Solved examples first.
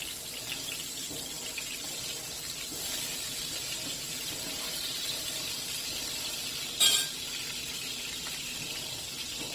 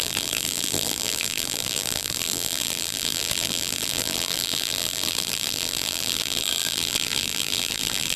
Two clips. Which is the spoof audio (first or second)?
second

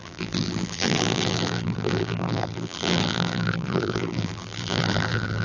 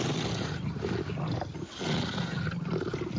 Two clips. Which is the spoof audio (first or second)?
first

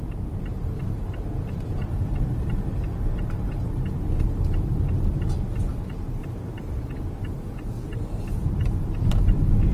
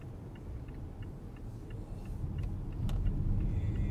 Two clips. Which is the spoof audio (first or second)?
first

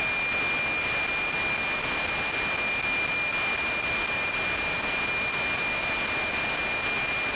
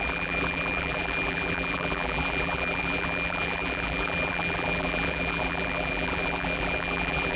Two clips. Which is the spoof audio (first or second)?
second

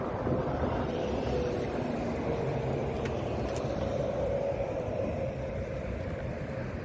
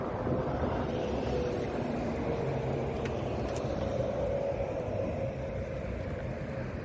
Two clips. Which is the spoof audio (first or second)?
first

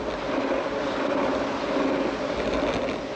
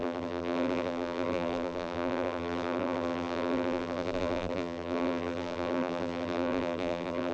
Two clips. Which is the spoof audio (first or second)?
second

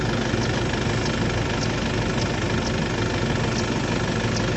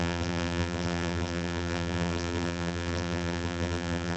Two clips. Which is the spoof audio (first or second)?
second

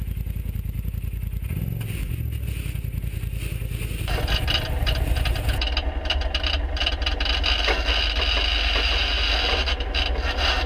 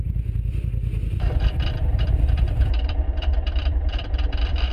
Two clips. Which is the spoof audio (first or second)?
second